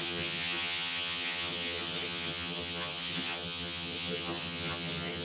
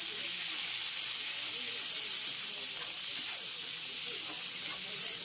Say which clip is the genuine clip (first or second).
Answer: second